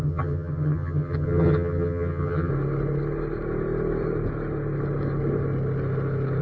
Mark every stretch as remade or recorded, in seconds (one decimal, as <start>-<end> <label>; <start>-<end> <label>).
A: 0.0-2.5 remade; 2.5-6.4 recorded